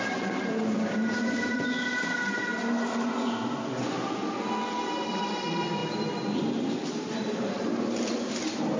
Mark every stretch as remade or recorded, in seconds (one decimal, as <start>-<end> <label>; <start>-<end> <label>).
0.0-8.8 recorded